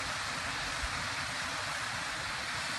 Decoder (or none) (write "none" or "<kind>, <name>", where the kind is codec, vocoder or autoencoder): none